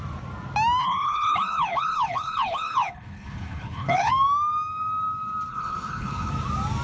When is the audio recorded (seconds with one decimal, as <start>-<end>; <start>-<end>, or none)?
0.0-0.8; 4.1-5.5; 6.3-6.8